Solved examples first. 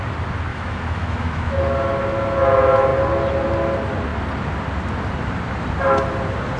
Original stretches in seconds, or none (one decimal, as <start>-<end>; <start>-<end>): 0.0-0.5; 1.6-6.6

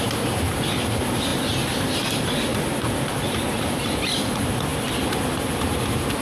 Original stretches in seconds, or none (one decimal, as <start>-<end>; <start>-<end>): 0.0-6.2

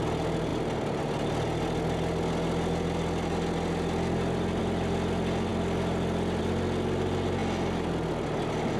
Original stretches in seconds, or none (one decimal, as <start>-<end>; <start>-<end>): 0.0-8.8

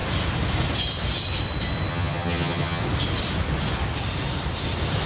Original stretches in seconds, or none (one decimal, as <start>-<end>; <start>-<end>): 0.0-1.9; 2.8-5.1

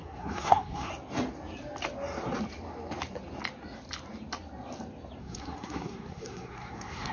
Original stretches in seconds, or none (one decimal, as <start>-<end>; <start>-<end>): 0.9-5.2

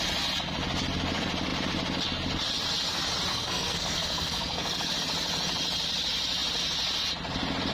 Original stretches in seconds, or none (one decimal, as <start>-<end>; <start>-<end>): 0.0-3.3; 4.9-7.7

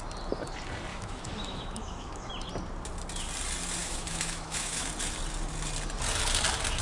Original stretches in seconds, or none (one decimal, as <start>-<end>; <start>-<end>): 0.0-0.9; 2.3-3.8; 4.9-6.8

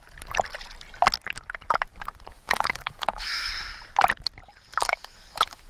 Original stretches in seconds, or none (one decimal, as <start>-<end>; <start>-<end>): 0.0-2.3; 3.5-4.7